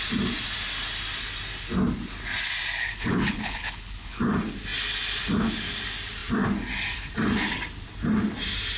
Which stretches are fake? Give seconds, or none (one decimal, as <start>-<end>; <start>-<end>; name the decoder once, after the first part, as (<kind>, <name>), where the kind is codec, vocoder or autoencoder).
2.8-4.2 (codec, HILCodec)